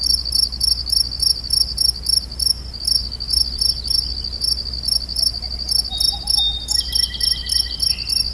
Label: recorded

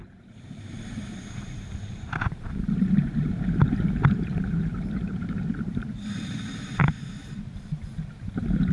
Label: remade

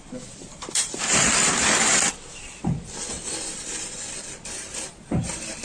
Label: remade